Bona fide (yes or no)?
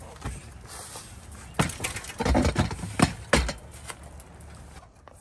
yes